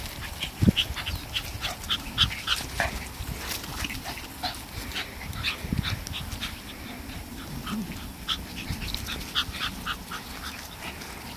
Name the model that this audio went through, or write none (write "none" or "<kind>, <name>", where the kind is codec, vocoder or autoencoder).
none